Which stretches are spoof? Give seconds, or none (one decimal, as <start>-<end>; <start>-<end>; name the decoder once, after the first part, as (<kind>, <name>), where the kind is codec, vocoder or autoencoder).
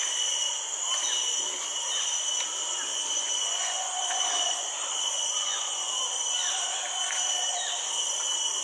2.9-5.9 (vocoder, Vocos)